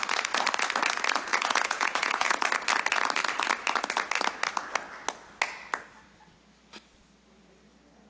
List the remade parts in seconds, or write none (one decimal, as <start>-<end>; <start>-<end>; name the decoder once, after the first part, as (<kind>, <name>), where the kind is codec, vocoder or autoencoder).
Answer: 1.3-2.4 (vocoder, Vocos)